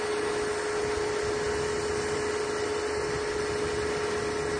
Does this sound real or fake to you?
real